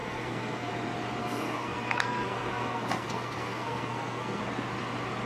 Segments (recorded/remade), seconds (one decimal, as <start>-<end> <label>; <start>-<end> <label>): 0.0-0.7 remade; 0.7-1.2 recorded; 1.2-4.4 remade; 4.4-5.3 recorded